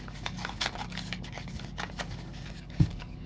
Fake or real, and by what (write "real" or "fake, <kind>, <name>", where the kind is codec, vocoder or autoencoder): fake, codec, DAC